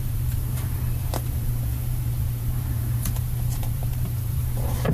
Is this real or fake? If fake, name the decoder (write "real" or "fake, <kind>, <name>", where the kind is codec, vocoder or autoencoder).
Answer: fake, vocoder, BigVGAN v2